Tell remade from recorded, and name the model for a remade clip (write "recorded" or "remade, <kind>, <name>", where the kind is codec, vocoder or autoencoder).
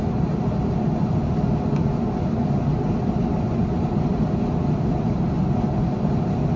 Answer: recorded